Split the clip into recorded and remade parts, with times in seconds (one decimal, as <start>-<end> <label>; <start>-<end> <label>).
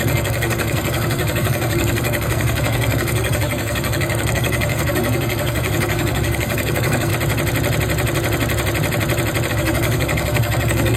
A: 0.0-7.1 remade; 7.1-9.5 recorded; 9.5-11.0 remade